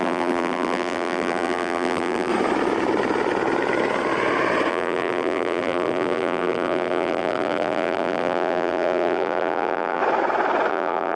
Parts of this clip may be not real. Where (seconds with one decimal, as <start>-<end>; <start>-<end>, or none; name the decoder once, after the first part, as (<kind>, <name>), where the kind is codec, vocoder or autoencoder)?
0.0-2.3 (vocoder, BigVGAN v2); 4.7-10.0; 10.7-11.1